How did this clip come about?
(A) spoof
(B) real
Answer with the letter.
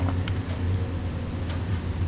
B